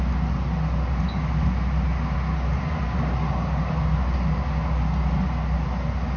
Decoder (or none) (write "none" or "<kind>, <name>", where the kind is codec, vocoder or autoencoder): none